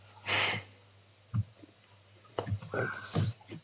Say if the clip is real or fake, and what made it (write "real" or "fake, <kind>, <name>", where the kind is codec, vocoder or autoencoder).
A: real